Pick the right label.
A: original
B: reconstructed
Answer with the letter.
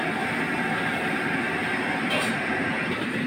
A